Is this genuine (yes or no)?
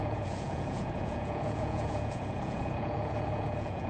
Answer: no